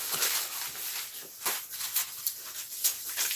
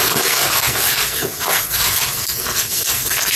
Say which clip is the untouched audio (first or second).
first